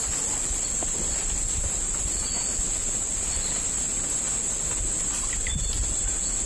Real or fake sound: real